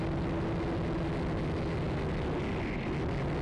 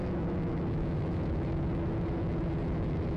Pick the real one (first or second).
first